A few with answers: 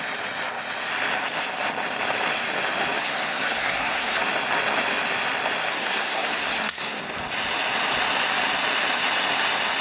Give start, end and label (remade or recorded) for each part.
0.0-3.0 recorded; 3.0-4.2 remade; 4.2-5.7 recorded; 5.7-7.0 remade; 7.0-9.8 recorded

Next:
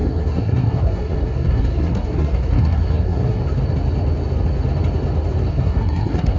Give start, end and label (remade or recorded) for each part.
0.0-3.4 remade; 3.4-5.5 recorded; 5.5-6.4 remade

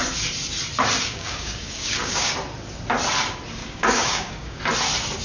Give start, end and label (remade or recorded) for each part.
0.0-1.0 recorded; 1.0-2.3 remade; 2.3-3.6 recorded; 3.6-4.6 remade; 4.6-5.2 recorded